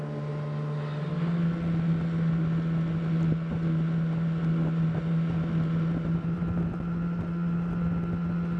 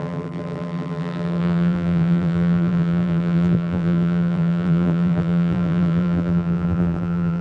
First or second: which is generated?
second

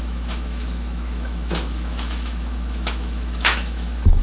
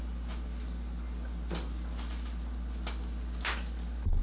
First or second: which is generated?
first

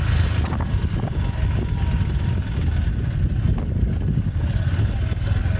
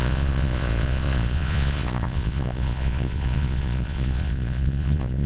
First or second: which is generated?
second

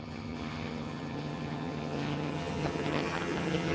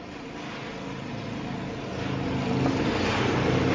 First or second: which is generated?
first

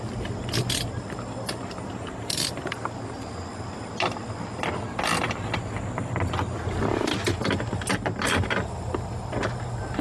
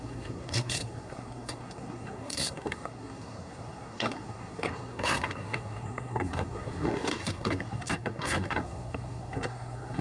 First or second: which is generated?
second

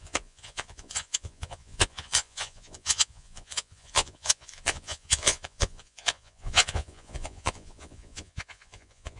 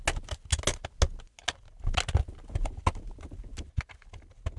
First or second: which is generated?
first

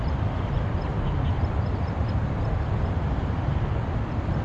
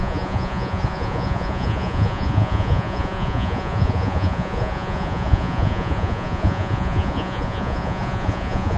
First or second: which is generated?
second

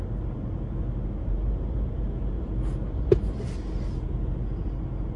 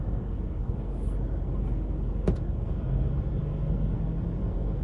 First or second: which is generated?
second